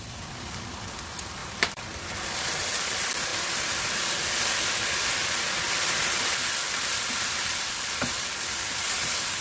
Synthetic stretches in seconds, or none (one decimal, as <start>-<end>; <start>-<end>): 1.4-2.6